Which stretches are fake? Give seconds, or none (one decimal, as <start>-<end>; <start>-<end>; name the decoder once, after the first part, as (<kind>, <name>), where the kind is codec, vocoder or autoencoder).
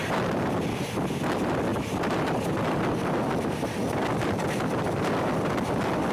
1.2-6.1 (vocoder, BigVGAN v2)